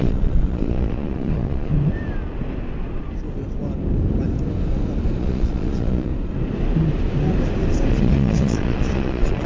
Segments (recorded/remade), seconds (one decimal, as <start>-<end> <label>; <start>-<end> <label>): 0.0-1.7 remade; 1.7-5.2 recorded; 5.2-6.1 remade; 6.1-7.9 recorded; 7.9-9.5 remade